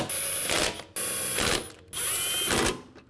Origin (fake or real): real